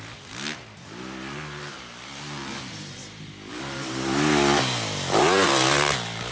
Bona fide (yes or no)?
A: yes